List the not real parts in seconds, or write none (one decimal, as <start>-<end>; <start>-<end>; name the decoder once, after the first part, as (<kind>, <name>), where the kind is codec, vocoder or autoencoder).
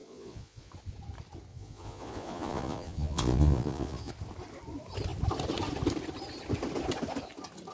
0.0-0.7 (vocoder, Vocos); 1.5-4.1